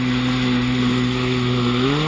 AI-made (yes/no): no